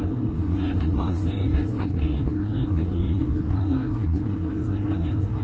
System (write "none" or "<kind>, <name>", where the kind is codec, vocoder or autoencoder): codec, SNAC